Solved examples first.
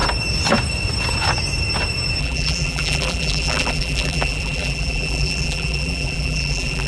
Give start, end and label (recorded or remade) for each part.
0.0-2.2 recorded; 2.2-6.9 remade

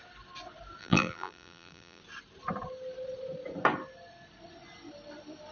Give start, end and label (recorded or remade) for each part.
0.0-0.8 recorded; 0.8-2.0 remade; 2.0-5.5 recorded

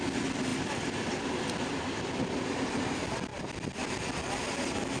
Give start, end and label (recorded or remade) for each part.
0.0-0.5 recorded; 0.5-2.6 remade; 2.6-3.3 recorded; 3.3-4.0 remade; 4.0-5.0 recorded

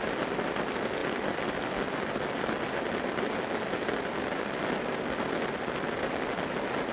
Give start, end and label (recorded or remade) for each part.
0.0-6.9 recorded

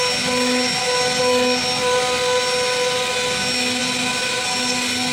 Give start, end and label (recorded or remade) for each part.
0.0-3.8 recorded; 3.8-4.4 remade; 4.4-5.1 recorded

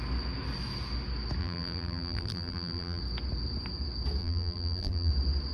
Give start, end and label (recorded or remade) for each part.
0.0-1.4 recorded; 1.4-3.0 remade; 3.0-4.2 recorded; 4.2-5.1 remade; 5.1-5.5 recorded

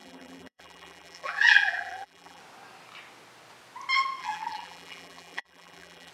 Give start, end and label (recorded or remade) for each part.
0.0-2.4 remade; 2.4-4.2 recorded; 4.2-6.1 remade